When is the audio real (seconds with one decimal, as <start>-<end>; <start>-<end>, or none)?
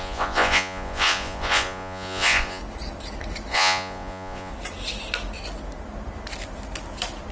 2.6-3.5; 4.5-7.3